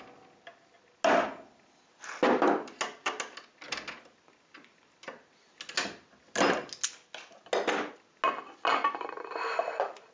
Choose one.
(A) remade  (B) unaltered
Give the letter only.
B